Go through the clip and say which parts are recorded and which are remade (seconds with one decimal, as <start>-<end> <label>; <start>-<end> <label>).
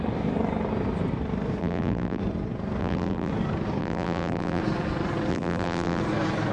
0.0-1.6 recorded; 1.6-2.2 remade; 2.2-2.8 recorded; 2.8-3.3 remade; 3.3-3.8 recorded; 3.8-4.6 remade; 4.6-5.3 recorded; 5.3-6.0 remade; 6.0-6.5 recorded